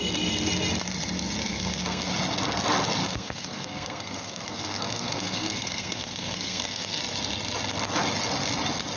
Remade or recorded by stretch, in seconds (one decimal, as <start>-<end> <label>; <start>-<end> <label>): 0.0-1.4 recorded; 1.4-2.1 remade; 2.1-3.0 recorded; 3.0-7.0 remade; 7.0-9.0 recorded